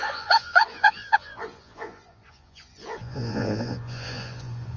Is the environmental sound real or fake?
fake